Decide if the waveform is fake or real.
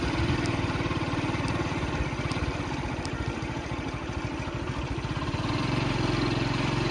fake